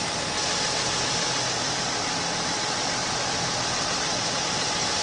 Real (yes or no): yes